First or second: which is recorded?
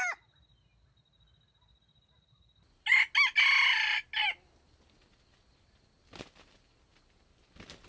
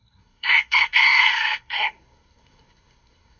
first